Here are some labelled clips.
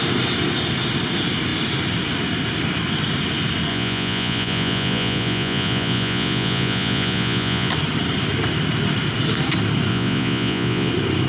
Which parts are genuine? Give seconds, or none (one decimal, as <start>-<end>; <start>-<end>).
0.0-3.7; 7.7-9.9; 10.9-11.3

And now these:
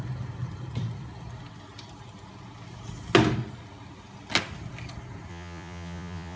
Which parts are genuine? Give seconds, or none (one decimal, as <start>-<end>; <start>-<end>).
0.0-5.3

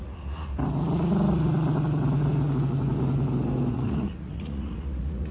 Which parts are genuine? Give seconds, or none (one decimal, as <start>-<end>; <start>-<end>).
0.5-3.7